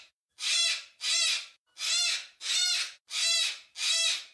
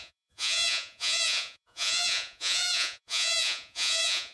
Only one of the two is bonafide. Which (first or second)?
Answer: first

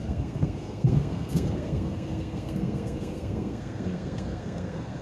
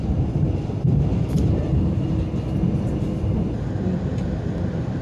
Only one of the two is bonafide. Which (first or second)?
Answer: second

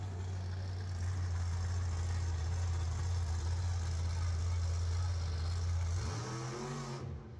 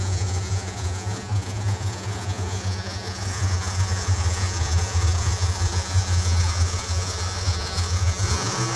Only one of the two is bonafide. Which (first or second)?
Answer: first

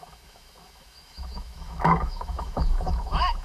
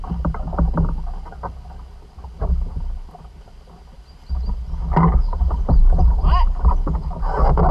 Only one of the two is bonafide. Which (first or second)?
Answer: second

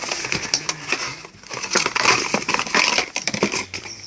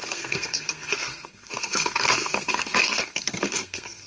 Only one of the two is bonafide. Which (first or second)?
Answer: first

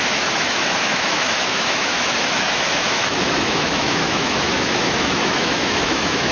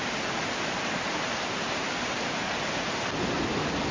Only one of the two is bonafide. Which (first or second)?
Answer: second